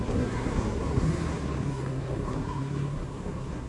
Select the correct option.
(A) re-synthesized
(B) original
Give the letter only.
A